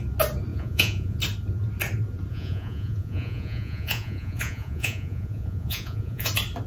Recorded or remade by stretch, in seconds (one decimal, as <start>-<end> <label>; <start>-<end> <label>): 0.0-0.5 recorded; 0.5-1.2 remade; 1.2-2.3 recorded; 2.3-6.3 remade; 6.3-6.7 recorded